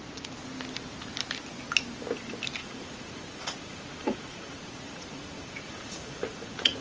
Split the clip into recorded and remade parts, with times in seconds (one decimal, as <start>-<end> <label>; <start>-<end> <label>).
0.0-2.6 recorded; 2.6-6.8 remade